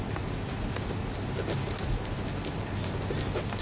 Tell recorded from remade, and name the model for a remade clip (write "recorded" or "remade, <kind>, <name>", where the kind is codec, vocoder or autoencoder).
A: recorded